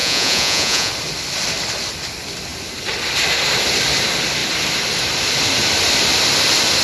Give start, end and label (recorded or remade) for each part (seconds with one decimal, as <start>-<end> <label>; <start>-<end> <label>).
0.0-0.9 remade; 0.9-6.8 recorded